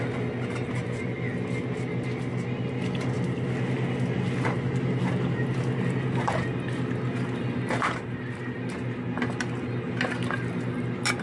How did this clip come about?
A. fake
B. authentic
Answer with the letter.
B